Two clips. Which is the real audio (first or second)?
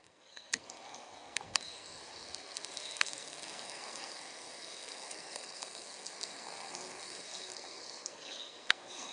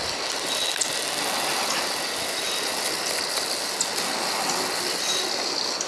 second